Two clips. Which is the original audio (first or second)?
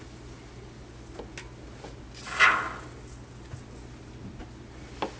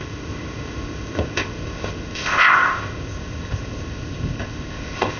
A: first